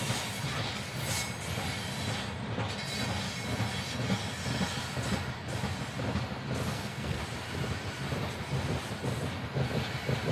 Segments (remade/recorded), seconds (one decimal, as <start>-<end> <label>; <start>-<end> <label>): 0.0-6.7 recorded; 6.7-7.2 remade; 7.2-10.3 recorded